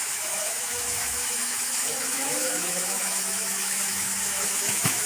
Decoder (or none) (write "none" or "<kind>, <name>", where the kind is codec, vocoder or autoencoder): autoencoder, DAC-VAE